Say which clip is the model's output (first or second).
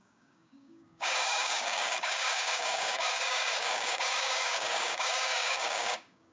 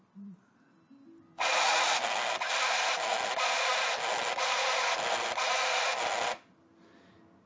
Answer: first